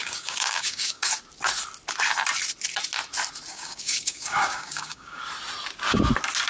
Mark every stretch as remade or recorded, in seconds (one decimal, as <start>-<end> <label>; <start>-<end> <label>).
0.0-1.1 remade; 1.1-3.5 recorded; 3.5-5.2 remade; 5.2-6.5 recorded